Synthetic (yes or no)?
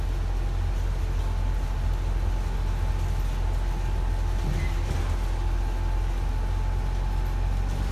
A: no